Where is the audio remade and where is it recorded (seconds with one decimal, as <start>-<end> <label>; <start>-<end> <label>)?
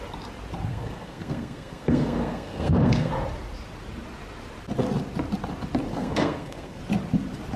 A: 0.0-0.7 recorded; 0.7-3.1 remade; 3.1-5.9 recorded; 5.9-6.8 remade; 6.8-7.6 recorded